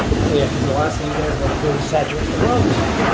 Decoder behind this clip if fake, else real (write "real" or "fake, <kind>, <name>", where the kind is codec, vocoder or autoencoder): real